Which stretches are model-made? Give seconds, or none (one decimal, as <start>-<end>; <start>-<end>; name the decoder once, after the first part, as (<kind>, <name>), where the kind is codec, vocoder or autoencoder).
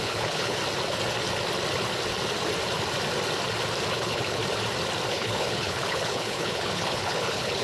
0.0-0.6 (codec, HILCodec); 3.9-4.4; 5.1-7.6